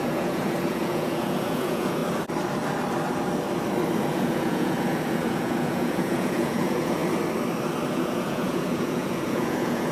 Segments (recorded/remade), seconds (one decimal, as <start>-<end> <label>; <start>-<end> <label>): 0.0-2.0 remade; 2.0-4.1 recorded; 4.1-7.0 remade; 7.0-7.9 recorded; 7.9-9.9 remade